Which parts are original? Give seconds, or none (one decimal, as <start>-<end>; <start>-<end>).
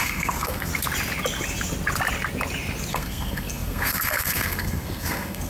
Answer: 0.7-2.9